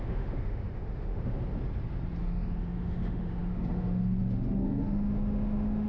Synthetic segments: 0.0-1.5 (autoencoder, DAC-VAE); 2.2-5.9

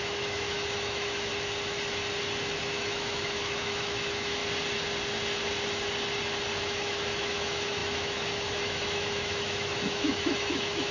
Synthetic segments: 0.0-1.3 (autoencoder, DAC-VAE); 2.6-4.4; 6.6-10.9

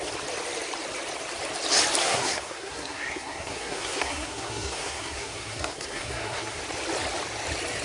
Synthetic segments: 2.0-6.6 (codec, SNAC)

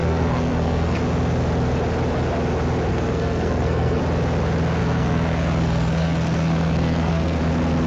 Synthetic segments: 0.0-1.0 (codec, SNAC); 2.9-4.0; 4.8-7.4

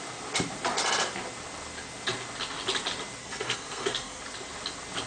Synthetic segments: 3.2-4.2 (codec, SNAC)

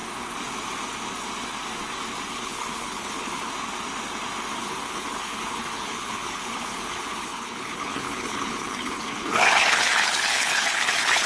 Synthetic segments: 2.3-3.5 (codec, HILCodec); 4.5-11.3